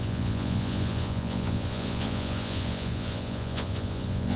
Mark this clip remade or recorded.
remade